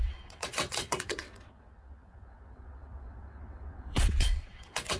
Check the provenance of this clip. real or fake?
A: fake